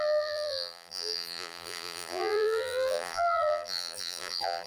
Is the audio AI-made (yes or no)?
yes